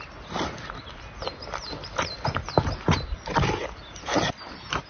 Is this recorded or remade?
recorded